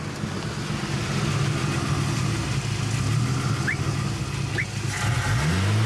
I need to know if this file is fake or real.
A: real